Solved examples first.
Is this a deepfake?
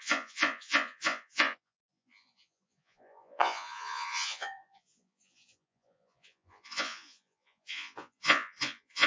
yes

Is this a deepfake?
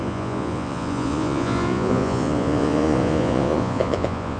yes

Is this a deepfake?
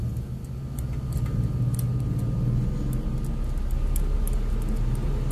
no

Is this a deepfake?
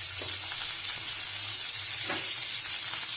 no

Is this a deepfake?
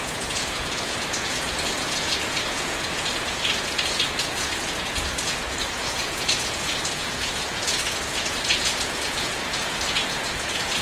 yes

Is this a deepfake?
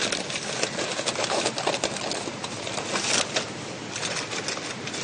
no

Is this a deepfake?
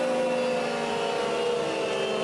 no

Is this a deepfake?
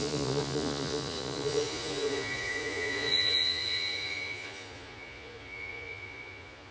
yes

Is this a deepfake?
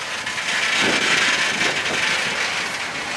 no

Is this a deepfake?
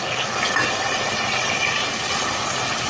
no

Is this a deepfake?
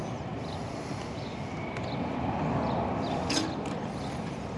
no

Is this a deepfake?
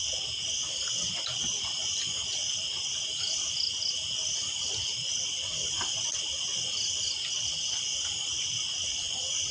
no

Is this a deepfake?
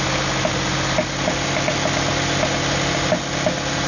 no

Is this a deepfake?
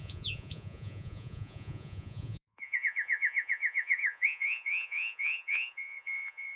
yes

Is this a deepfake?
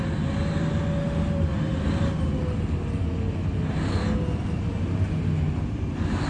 no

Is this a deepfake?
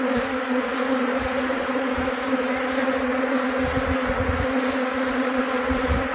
yes